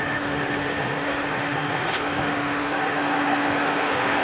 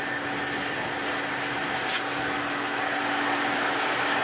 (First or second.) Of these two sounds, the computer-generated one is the first